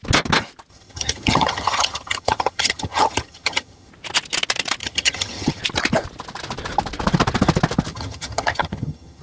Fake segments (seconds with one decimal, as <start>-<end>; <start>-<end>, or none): 0.7-3.9; 4.8-5.6; 7.9-9.2